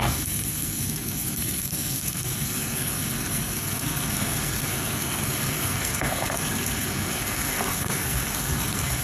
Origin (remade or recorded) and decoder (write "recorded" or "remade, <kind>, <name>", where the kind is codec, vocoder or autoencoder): remade, codec, SNAC